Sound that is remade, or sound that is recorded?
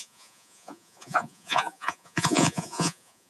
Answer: remade